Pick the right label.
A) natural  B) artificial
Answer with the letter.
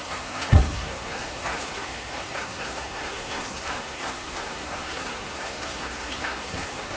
B